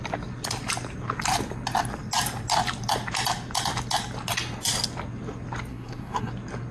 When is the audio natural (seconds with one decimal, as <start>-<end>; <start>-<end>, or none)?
0.0-5.7; 6.3-6.7